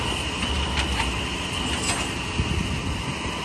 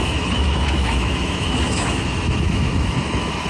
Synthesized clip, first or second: second